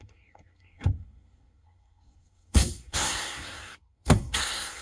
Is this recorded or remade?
remade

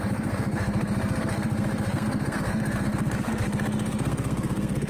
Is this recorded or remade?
remade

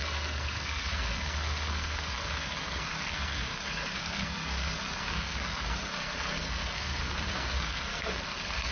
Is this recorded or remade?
remade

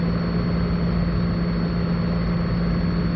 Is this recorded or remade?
recorded